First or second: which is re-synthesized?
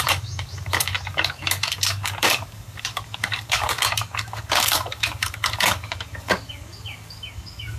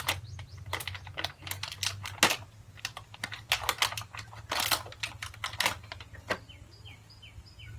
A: first